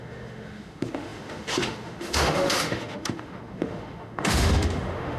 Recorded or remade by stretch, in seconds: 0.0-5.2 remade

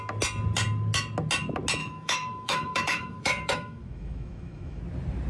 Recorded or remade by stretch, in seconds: 0.0-1.8 recorded; 1.8-4.8 remade; 4.8-5.3 recorded

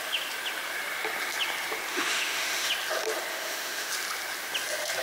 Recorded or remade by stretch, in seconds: 0.0-1.9 recorded; 1.9-2.7 remade; 2.7-3.3 recorded; 3.3-3.9 remade; 3.9-5.0 recorded

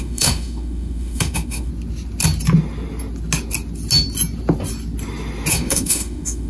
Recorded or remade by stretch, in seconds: 0.0-1.7 remade; 1.7-5.5 recorded; 5.5-6.5 remade

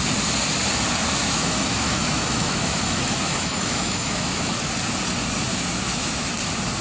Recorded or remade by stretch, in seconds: 0.0-1.2 recorded; 1.2-4.5 remade; 4.5-5.5 recorded; 5.5-6.3 remade; 6.3-6.8 recorded

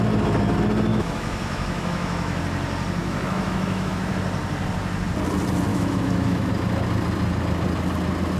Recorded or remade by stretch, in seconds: 0.0-0.9 recorded; 0.9-2.4 remade; 2.4-3.0 recorded; 3.0-4.1 remade; 4.1-5.7 recorded; 5.7-6.5 remade; 6.5-8.4 recorded

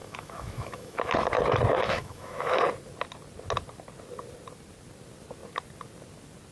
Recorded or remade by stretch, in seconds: 0.0-1.1 remade; 1.1-1.7 recorded; 1.7-2.6 remade; 2.6-6.5 recorded

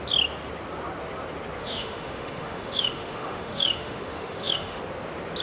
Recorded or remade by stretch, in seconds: 0.0-1.6 recorded; 1.6-4.8 remade; 4.8-5.4 recorded